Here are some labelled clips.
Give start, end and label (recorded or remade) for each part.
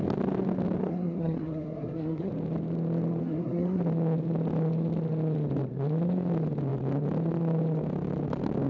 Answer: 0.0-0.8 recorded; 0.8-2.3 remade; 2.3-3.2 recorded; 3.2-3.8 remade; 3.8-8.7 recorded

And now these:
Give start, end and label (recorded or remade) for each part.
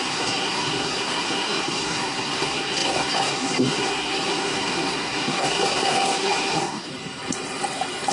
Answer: 0.0-6.9 remade; 6.9-8.1 recorded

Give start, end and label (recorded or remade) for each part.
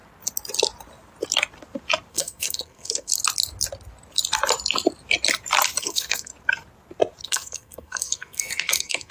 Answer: 0.0-2.1 recorded; 2.1-3.1 remade; 3.1-5.8 recorded; 5.8-6.3 remade; 6.3-7.2 recorded; 7.2-9.1 remade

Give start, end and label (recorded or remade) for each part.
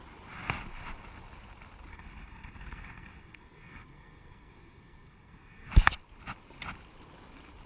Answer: 0.0-1.9 recorded; 1.9-5.7 remade; 5.7-7.7 recorded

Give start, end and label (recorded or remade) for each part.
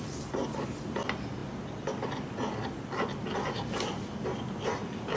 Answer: 0.0-5.2 recorded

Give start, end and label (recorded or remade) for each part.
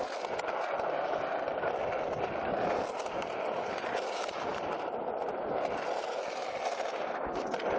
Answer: 0.0-7.8 recorded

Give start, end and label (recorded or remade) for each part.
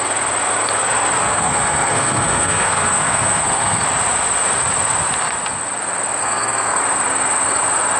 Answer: 0.0-1.2 recorded; 1.2-3.8 remade; 3.8-6.2 recorded; 6.2-6.8 remade; 6.8-8.0 recorded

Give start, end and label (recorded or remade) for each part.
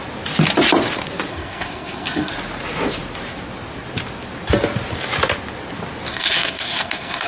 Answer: 0.0-1.3 recorded; 1.3-2.3 remade; 2.3-6.1 recorded; 6.1-7.3 remade